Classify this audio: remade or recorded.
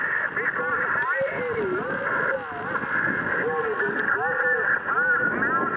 recorded